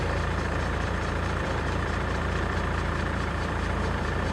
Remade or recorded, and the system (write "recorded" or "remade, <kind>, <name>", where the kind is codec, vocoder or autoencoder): remade, vocoder, BigVGAN v2